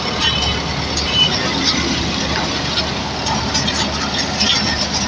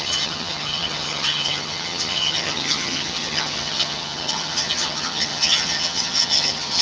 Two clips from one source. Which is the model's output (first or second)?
second